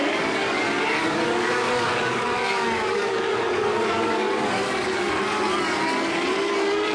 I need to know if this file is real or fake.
fake